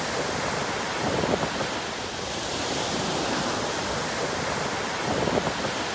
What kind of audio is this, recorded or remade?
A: recorded